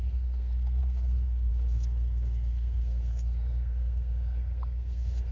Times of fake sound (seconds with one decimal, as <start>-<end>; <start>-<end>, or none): 0.0-5.3